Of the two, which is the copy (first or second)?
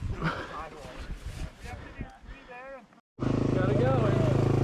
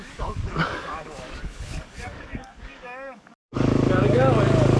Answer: second